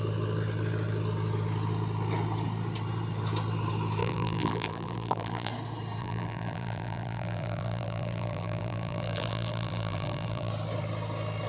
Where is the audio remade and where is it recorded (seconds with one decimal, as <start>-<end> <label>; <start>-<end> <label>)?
0.0-4.0 recorded; 4.0-5.5 remade; 5.5-6.0 recorded; 6.0-10.5 remade; 10.5-11.5 recorded

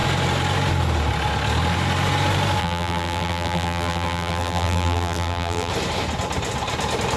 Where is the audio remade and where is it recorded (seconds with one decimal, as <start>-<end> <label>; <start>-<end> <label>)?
0.0-2.6 recorded; 2.6-5.7 remade; 5.7-7.2 recorded

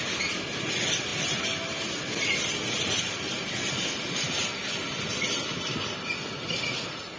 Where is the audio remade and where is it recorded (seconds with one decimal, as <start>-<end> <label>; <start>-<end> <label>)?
0.0-7.2 recorded

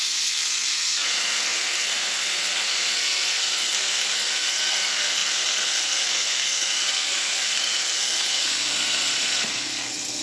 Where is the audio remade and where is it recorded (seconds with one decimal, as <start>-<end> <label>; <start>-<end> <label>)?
0.0-10.2 remade

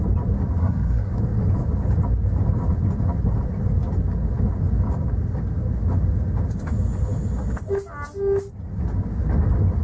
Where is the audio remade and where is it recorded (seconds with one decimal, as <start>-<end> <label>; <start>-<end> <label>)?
0.0-0.6 recorded; 0.6-1.1 remade; 1.1-9.8 recorded

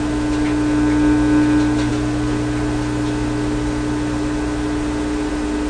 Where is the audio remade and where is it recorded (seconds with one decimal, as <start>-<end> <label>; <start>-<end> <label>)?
0.0-5.7 recorded

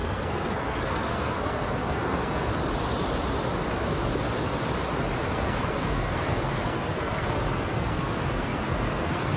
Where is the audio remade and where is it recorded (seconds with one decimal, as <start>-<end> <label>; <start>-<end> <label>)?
0.0-2.5 remade; 2.5-5.3 recorded; 5.3-9.4 remade